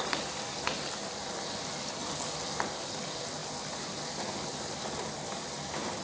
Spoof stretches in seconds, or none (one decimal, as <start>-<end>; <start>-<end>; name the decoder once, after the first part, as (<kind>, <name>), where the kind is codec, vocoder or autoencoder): none